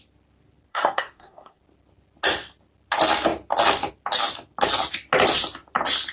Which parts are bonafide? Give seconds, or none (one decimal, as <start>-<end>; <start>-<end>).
0.0-0.7; 1.6-6.1